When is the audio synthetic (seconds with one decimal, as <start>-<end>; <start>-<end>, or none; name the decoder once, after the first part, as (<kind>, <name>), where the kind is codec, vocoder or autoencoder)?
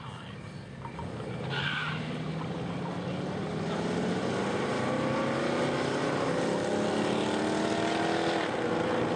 none